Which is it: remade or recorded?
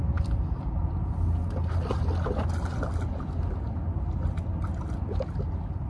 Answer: recorded